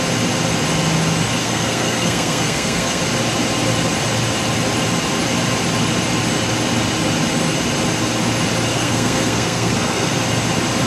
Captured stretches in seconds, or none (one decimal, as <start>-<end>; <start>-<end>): 0.0-1.4; 3.0-8.7; 10.1-10.9